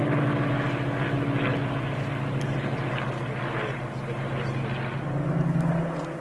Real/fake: real